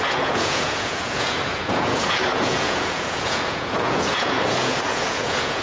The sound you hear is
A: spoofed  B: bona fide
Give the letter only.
A